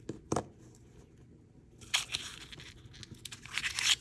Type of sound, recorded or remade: recorded